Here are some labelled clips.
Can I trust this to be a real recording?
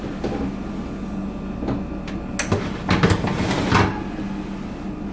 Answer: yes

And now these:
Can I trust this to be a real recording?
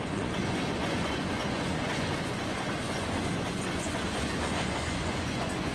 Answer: no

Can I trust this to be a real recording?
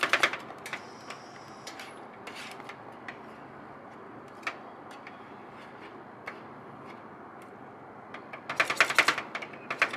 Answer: yes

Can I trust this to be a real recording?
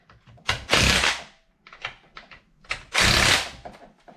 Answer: yes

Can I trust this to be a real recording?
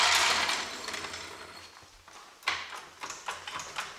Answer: yes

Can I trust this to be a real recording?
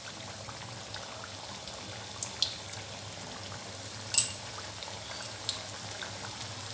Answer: yes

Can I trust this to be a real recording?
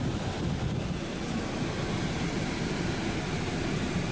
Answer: yes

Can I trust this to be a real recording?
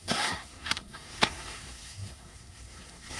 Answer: no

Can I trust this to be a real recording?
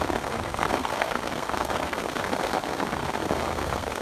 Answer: no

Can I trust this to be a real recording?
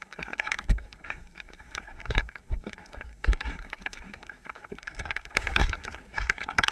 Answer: no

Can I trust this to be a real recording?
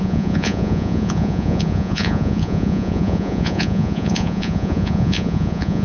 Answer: no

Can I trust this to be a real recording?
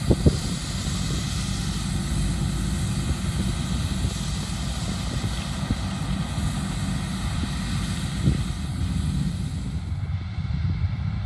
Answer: yes